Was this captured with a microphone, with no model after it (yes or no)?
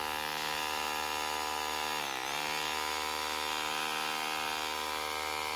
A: yes